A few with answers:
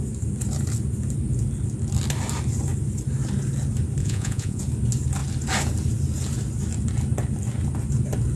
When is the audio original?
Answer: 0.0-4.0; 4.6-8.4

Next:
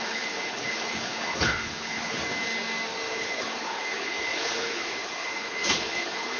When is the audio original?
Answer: 2.2-3.1

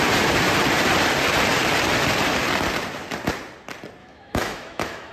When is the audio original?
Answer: 0.0-4.0

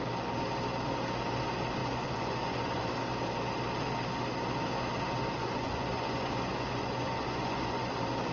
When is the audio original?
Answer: 0.0-1.8; 2.9-5.4; 7.9-8.3